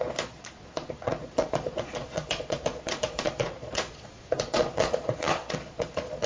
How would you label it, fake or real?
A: fake